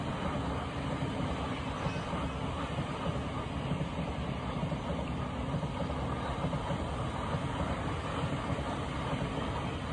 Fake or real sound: real